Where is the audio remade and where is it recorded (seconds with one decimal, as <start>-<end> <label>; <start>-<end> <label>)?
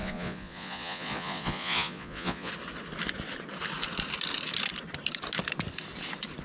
0.0-2.5 remade; 2.5-6.4 recorded